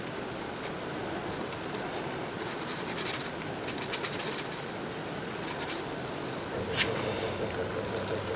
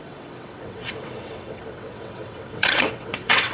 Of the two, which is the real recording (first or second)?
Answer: first